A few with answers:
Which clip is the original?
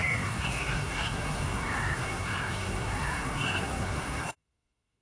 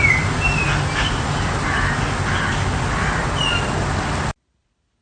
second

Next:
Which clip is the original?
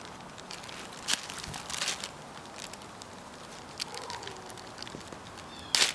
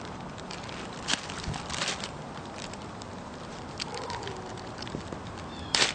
first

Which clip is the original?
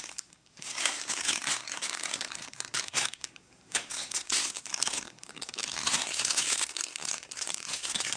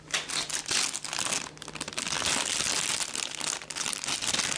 second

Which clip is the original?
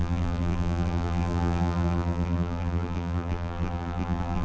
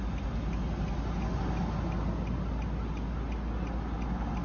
second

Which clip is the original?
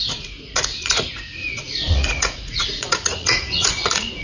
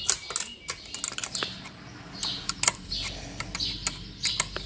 second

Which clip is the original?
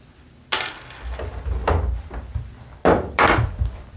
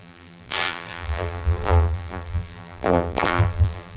first